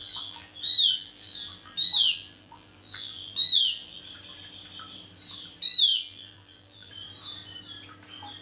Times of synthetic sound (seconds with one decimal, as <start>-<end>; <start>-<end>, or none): 0.0-4.0; 5.9-6.9